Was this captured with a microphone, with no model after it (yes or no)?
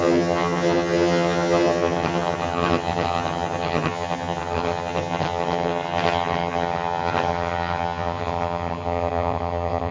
no